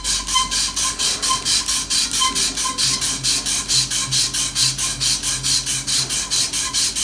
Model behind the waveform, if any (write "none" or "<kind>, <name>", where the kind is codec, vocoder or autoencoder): none